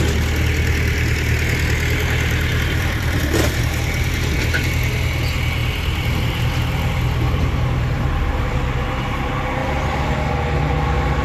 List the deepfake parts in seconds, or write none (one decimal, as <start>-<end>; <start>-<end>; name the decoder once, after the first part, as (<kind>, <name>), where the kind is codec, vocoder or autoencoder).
2.5-3.6 (vocoder, BigVGAN v2); 5.6-6.4; 9.6-10.3